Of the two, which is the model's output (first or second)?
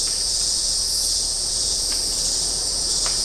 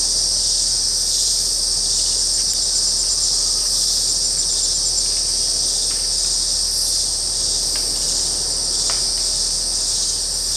first